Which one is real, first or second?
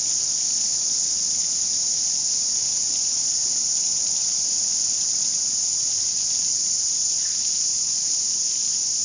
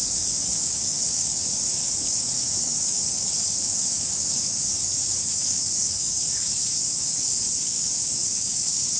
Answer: first